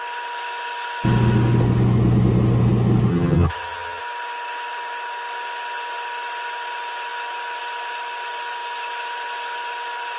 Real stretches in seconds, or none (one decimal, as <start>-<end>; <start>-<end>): 0.0-3.1; 4.0-10.2